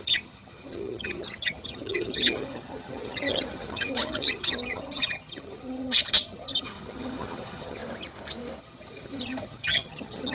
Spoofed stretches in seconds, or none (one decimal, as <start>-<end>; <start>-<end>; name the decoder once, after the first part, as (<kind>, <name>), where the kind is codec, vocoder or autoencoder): 0.0-7.8 (vocoder, HiFi-GAN); 8.6-10.3